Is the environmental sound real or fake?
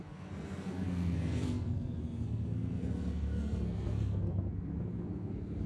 fake